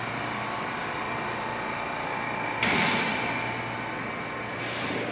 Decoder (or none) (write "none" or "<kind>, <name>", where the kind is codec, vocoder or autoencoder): none